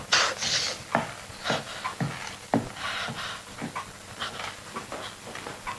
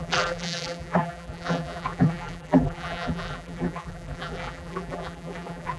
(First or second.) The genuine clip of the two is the first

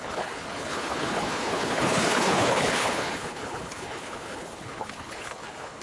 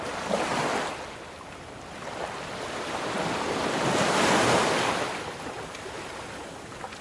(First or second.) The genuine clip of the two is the second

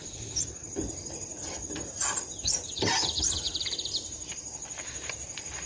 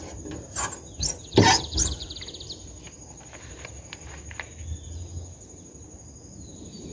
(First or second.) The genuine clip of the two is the second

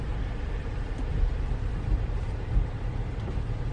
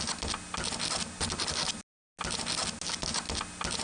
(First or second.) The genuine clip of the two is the second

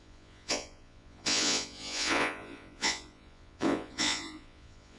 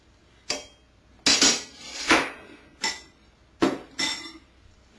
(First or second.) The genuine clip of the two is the second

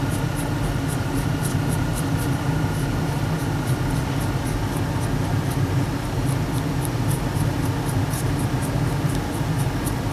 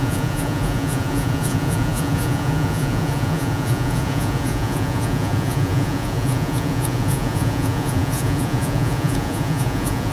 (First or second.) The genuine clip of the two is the first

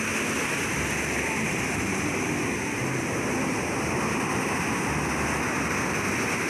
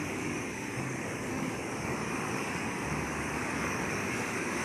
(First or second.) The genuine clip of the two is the first